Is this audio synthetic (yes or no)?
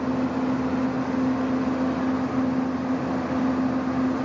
no